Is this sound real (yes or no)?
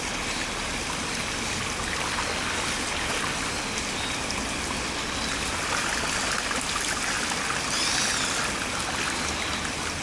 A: yes